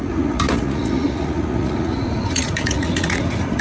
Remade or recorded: remade